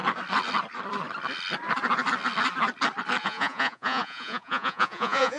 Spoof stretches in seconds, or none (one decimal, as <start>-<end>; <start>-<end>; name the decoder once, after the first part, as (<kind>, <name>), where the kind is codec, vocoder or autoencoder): 3.2-5.4 (vocoder, Vocos)